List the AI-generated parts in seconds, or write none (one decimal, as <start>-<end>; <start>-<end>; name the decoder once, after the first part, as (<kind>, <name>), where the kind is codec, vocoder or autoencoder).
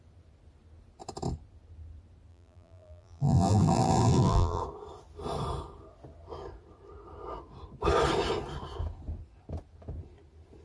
2.3-4.6 (vocoder, BigVGAN v2)